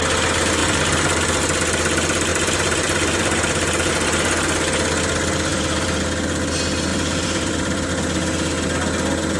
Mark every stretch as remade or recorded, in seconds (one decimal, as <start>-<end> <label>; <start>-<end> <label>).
0.0-0.6 recorded; 0.6-1.4 remade; 1.4-2.3 recorded; 2.3-3.9 remade; 3.9-5.5 recorded; 5.5-6.1 remade; 6.1-6.9 recorded; 6.9-7.9 remade; 7.9-9.4 recorded